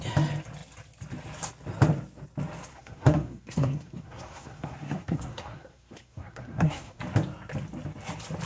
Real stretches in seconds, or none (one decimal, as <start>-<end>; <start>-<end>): 0.0-2.7; 7.0-8.5